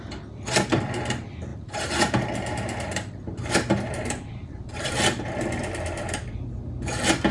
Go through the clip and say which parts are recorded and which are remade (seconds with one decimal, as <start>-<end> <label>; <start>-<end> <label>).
0.0-1.5 recorded; 1.5-4.9 remade; 4.9-7.3 recorded